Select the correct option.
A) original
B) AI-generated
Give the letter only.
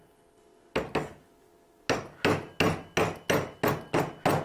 A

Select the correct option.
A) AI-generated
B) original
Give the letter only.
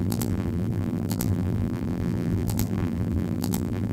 A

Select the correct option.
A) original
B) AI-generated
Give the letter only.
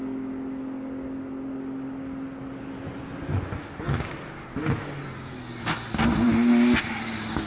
A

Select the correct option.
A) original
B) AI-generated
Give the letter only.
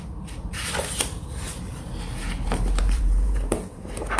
B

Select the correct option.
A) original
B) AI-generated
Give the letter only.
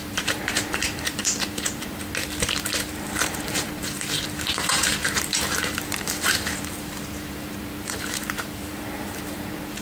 B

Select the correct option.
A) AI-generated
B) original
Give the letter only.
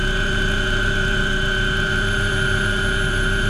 A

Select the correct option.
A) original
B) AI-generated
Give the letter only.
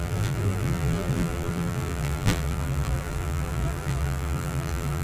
B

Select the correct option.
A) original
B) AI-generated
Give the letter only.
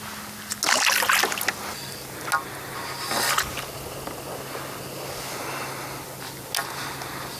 A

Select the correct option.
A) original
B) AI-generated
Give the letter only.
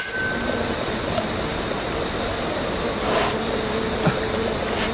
A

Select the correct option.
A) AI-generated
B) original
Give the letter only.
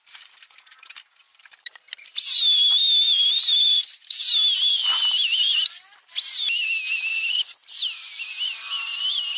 A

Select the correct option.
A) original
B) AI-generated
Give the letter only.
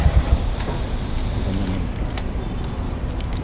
B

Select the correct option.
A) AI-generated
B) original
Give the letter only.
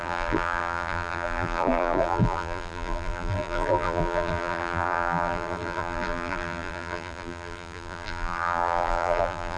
A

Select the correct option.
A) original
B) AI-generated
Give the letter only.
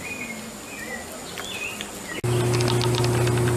A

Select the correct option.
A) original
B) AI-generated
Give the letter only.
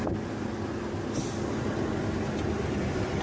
A